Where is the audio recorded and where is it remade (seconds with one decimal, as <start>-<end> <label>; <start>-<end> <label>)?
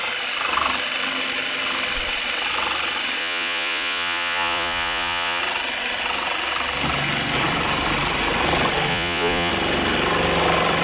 0.0-3.2 recorded; 3.2-5.4 remade; 5.4-8.9 recorded; 8.9-9.5 remade; 9.5-10.8 recorded